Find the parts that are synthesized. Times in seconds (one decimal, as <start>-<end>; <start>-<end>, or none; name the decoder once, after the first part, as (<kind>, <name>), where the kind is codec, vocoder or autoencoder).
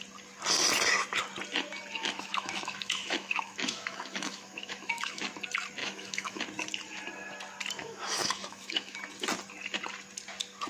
2.0-5.2 (autoencoder, DAC-VAE); 5.8-6.4; 7.8-9.0